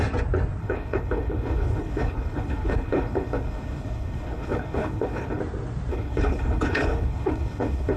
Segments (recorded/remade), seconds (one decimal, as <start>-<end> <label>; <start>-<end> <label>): 0.0-0.6 recorded; 0.6-5.4 remade; 5.4-5.9 recorded; 5.9-8.0 remade